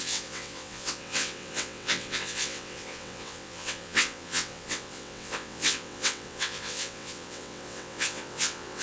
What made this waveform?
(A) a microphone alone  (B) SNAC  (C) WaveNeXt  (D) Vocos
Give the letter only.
C